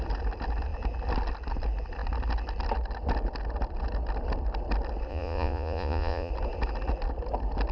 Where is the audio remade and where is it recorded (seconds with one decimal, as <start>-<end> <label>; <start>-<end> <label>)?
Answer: 0.0-5.1 recorded; 5.1-6.3 remade; 6.3-7.7 recorded